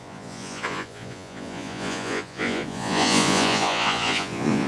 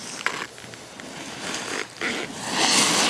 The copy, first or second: first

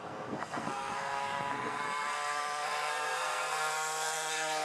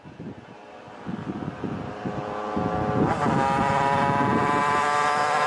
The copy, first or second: first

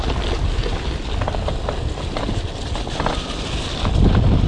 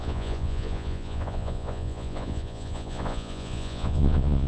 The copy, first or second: second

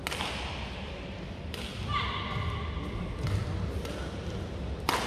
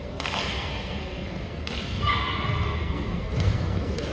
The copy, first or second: second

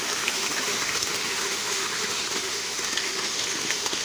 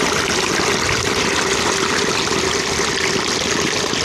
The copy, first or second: first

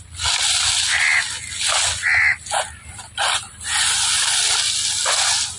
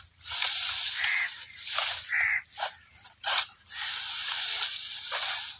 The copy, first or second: second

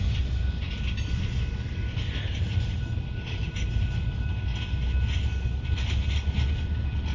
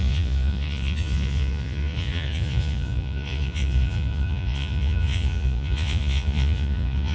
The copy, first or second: second